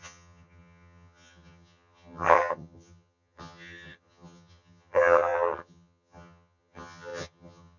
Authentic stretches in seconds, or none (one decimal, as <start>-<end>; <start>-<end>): none